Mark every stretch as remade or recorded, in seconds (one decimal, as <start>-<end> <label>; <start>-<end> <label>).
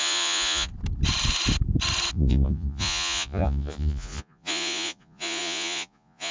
0.0-0.7 remade; 0.7-2.1 recorded; 2.1-6.3 remade